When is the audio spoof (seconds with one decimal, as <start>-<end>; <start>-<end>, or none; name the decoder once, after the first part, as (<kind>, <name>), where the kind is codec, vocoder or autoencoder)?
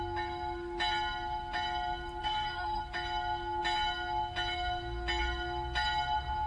2.2-2.8 (codec, SNAC)